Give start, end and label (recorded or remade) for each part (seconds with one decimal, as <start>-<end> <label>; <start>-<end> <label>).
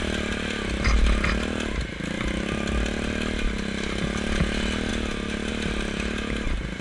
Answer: 0.0-6.8 recorded